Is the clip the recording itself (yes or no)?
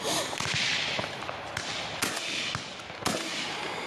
yes